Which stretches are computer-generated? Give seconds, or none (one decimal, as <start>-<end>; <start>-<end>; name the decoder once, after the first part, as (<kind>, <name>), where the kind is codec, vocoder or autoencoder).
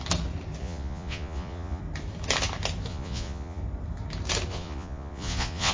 0.6-1.8 (vocoder, Vocos); 2.9-3.6; 4.5-5.7